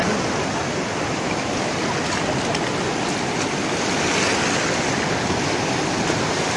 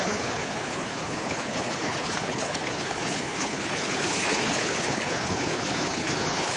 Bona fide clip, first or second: first